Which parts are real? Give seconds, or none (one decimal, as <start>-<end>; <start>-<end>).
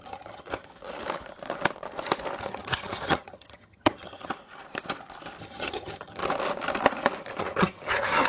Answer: 0.7-2.4; 4.3-5.4; 6.2-7.4